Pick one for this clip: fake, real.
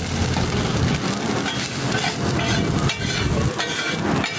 real